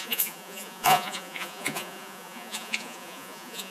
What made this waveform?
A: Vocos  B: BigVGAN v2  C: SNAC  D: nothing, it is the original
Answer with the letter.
A